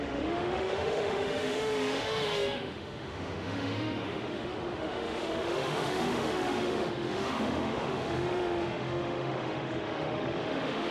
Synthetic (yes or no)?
yes